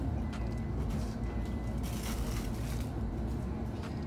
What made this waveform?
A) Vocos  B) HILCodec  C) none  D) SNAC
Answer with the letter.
C